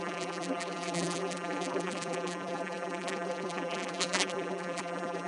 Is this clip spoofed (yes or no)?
yes